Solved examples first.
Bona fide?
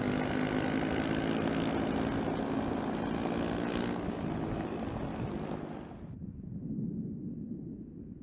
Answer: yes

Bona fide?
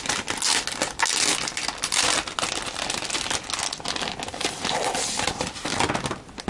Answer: yes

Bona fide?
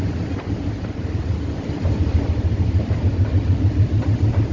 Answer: no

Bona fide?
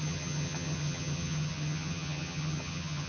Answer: no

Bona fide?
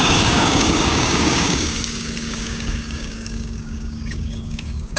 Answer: no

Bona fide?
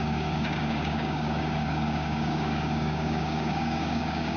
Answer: no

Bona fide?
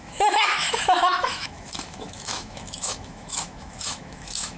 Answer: no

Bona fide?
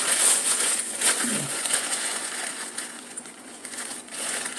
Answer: no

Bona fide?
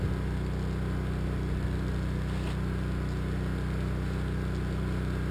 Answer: yes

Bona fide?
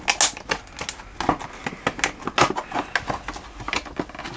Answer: yes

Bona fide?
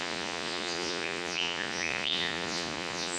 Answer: no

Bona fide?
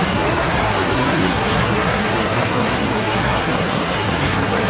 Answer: no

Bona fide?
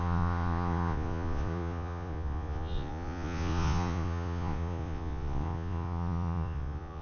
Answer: no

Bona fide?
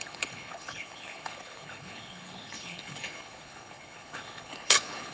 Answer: no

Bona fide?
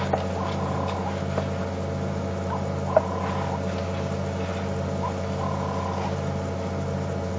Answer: yes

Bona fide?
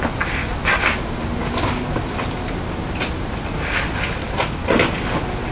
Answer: yes